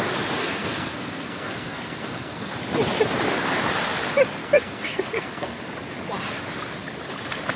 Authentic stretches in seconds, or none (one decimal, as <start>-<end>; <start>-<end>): 0.0-0.4; 2.5-4.4; 5.6-7.6